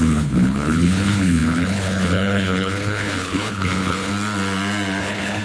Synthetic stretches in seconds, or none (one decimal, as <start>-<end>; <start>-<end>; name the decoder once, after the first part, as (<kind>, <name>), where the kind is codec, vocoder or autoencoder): 0.0-4.1 (codec, HILCodec); 5.0-5.4